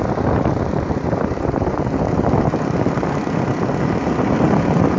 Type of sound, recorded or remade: recorded